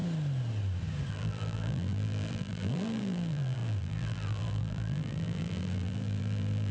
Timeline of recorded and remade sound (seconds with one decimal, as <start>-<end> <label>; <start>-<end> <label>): 0.0-1.1 recorded; 1.1-6.7 remade